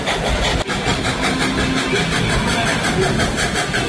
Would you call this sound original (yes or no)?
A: yes